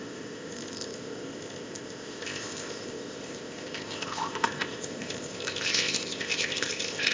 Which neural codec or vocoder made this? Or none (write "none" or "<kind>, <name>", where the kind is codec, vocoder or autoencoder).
codec, ZipCodec